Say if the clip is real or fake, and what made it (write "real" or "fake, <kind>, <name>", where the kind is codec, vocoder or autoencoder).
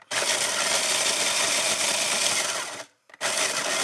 real